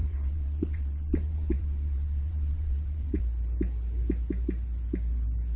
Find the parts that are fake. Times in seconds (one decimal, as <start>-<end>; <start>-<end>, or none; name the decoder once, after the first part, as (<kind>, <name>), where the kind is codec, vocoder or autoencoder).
0.0-3.2 (vocoder, WaveNeXt)